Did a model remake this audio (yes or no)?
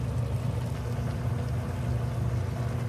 no